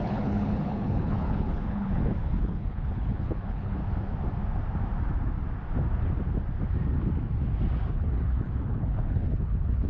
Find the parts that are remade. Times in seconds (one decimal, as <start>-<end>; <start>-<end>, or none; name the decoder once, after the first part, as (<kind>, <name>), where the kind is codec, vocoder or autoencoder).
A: 0.0-3.8 (codec, HILCodec); 7.9-9.9

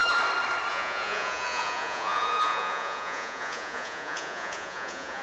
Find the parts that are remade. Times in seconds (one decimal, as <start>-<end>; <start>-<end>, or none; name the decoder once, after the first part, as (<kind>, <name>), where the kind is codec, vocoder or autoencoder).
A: 0.7-5.2 (vocoder, Vocos)

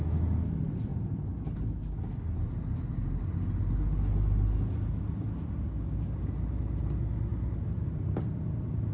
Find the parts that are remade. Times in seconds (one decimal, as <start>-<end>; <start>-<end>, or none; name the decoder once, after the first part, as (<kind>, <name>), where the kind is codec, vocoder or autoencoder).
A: none

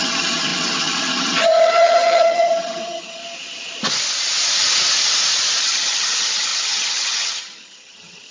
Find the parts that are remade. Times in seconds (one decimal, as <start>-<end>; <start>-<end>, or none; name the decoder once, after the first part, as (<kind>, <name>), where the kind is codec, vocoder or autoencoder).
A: 0.0-3.2 (vocoder, HiFi-GAN); 5.6-8.3

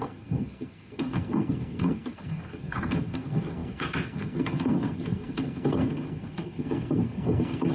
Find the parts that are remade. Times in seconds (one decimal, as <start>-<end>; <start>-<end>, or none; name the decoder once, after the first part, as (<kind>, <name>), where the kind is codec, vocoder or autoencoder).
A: 0.0-7.7 (codec, SNAC)